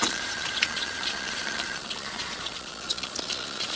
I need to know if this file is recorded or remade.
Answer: remade